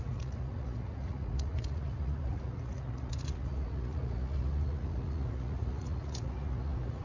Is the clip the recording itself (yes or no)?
no